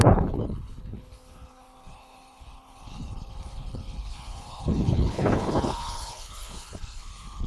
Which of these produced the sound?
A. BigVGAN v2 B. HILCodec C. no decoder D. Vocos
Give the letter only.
B